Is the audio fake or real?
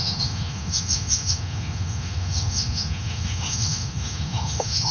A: fake